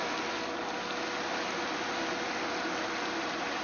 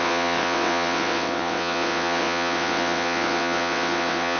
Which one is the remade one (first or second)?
second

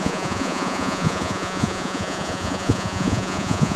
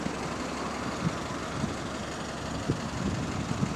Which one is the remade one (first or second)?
first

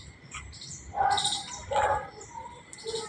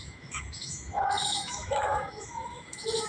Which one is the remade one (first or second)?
second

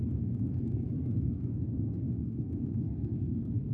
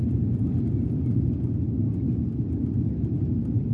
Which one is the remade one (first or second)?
first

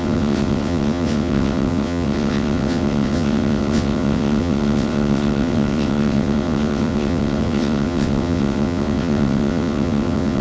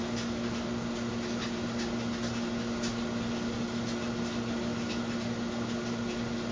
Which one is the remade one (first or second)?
first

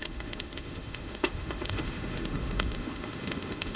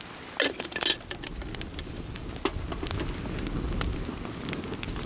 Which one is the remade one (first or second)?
first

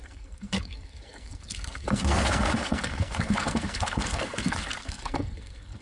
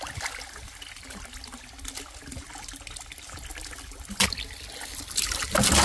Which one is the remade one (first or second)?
first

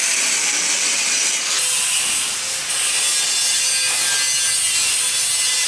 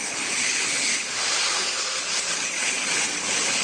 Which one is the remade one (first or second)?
second